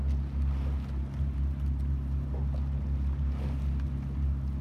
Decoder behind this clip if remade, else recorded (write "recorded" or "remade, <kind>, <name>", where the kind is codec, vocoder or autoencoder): recorded